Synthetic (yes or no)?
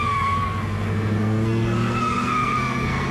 yes